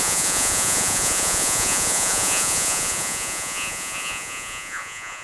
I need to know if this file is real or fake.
fake